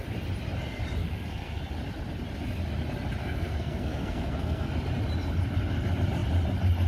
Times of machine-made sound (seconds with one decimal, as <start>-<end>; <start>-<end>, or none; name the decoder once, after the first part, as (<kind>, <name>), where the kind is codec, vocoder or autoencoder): 1.0-1.6 (codec, SNAC); 3.2-4.7